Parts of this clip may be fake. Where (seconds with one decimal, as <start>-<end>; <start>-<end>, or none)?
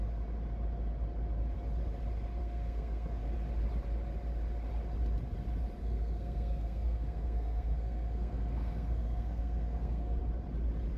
2.4-3.2; 5.8-10.2